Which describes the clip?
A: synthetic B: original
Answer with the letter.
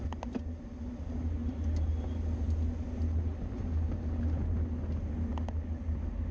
B